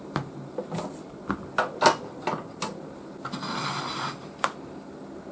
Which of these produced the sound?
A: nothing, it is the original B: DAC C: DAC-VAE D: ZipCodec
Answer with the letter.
A